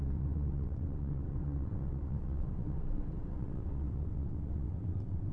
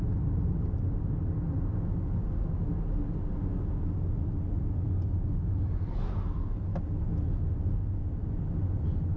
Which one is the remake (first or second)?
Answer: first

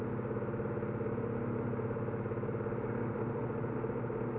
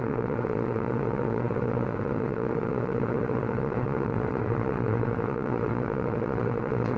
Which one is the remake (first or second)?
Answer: second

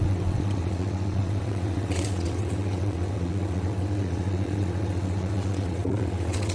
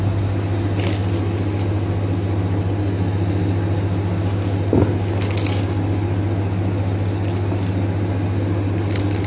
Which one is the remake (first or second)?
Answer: first